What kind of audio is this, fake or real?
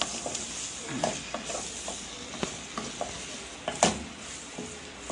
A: real